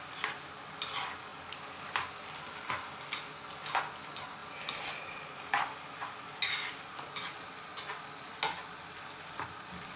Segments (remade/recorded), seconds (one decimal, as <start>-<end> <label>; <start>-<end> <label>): 0.0-10.0 recorded

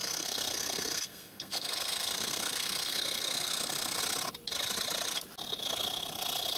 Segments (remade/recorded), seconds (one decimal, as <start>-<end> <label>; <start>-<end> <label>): 0.0-4.0 remade; 4.0-6.6 recorded

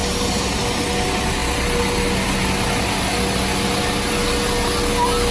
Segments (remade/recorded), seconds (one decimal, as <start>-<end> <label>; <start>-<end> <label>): 0.0-5.3 recorded